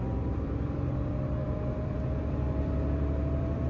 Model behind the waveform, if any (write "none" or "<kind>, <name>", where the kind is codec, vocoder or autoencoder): vocoder, BigVGAN v2